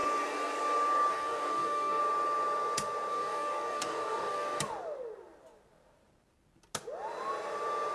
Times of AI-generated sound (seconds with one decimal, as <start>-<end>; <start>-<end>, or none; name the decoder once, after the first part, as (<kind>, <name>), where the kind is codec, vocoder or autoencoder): 1.1-2.0 (codec, DAC); 3.1-4.6